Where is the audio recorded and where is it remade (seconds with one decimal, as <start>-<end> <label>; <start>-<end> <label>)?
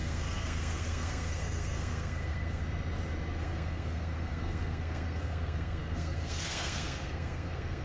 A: 0.0-2.6 remade; 2.6-3.4 recorded; 3.4-7.8 remade